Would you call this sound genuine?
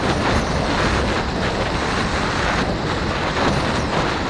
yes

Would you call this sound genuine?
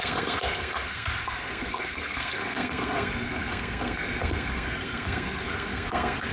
no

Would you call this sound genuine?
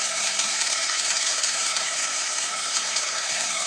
no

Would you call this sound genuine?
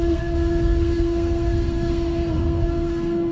no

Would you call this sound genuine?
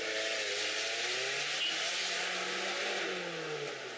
yes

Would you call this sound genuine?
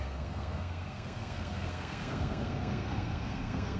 no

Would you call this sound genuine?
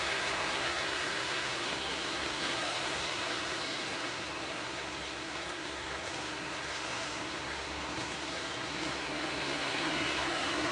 no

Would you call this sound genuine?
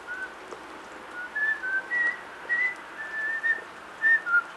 yes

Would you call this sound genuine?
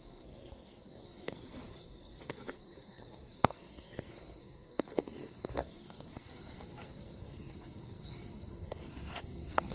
no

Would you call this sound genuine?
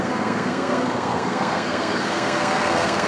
no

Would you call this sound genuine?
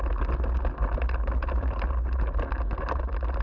yes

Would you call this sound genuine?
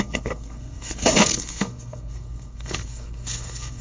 no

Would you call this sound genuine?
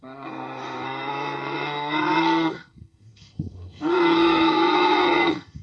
no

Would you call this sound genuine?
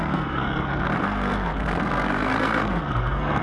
no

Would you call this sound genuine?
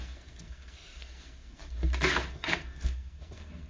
no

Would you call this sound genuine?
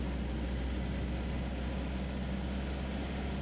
yes